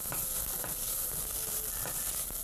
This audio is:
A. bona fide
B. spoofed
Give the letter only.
A